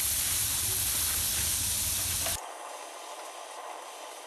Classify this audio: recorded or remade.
recorded